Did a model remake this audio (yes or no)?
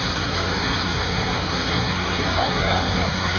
yes